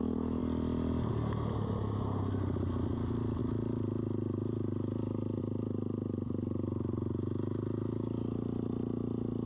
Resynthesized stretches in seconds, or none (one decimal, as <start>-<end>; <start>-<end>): none